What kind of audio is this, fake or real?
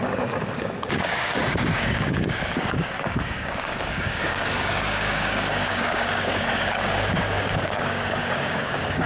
fake